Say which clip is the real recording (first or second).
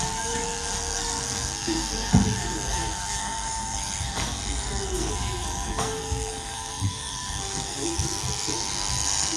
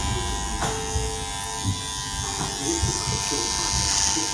second